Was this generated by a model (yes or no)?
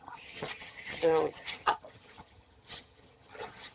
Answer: yes